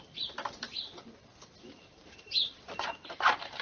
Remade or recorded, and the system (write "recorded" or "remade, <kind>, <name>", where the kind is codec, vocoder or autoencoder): remade, vocoder, BigVGAN v2